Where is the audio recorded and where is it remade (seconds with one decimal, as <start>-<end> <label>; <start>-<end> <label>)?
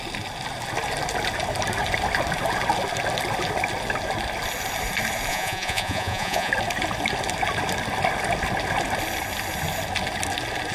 0.0-5.3 recorded; 5.3-6.5 remade; 6.5-10.7 recorded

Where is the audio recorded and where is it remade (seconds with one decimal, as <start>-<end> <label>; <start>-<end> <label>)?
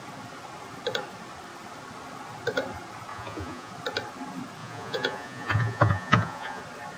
0.0-3.1 recorded; 3.1-3.7 remade; 3.7-4.6 recorded; 4.6-6.6 remade; 6.6-7.0 recorded